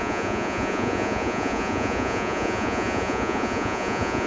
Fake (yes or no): yes